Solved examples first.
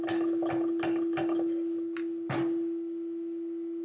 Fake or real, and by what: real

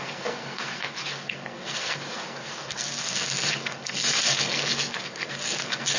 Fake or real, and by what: fake, codec, SNAC